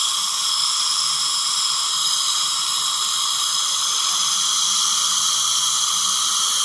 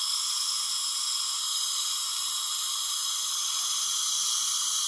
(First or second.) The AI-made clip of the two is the first